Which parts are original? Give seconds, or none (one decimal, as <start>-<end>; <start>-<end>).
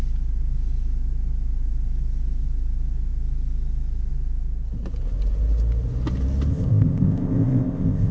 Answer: 0.0-6.5